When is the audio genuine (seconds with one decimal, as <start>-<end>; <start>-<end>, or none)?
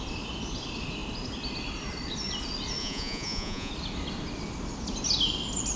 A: 0.0-2.8; 3.7-5.8